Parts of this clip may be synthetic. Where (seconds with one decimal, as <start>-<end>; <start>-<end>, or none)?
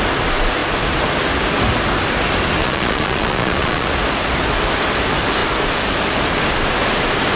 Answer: 2.6-3.9